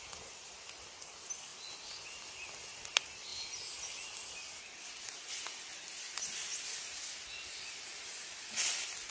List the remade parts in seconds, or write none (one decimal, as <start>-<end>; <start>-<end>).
none